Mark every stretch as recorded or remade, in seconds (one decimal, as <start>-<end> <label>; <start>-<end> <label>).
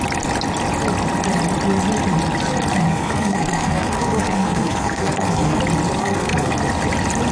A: 0.0-2.9 recorded; 2.9-5.6 remade; 5.6-6.0 recorded; 6.0-6.5 remade; 6.5-7.3 recorded